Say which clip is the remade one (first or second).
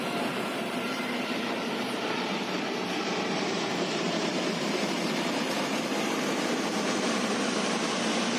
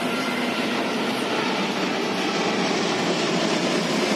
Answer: first